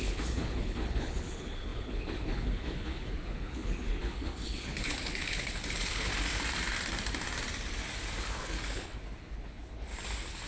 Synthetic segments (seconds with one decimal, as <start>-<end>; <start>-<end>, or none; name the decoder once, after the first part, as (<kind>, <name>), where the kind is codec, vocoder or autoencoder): 0.0-6.1 (codec, HILCodec); 8.2-9.9